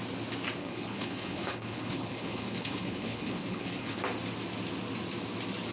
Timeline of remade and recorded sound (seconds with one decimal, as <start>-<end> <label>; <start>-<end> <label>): 0.0-0.6 recorded; 0.6-4.0 remade; 4.0-5.7 recorded